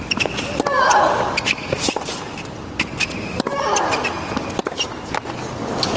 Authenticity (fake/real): real